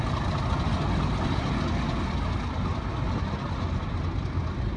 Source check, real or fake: real